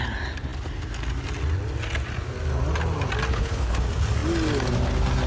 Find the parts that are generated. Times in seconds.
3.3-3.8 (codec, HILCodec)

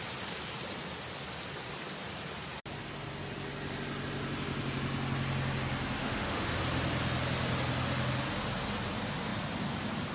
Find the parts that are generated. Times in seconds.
6.0-6.6 (autoencoder, DAC-VAE)

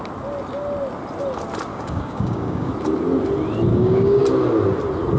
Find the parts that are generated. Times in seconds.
1.7-2.7 (codec, DAC); 3.7-4.2

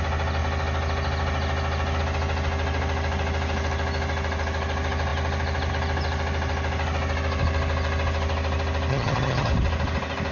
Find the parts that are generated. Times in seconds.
8.9-9.5 (vocoder, HiFi-GAN)

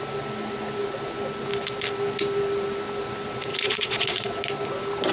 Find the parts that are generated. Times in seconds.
3.5-4.3 (vocoder, Vocos)

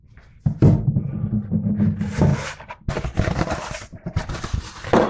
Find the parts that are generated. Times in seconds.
2.3-2.9 (vocoder, BigVGAN v2); 3.9-5.1

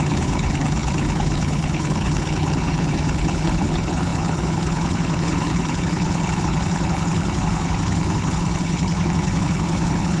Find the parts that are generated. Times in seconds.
0.0-10.2 (codec, HILCodec)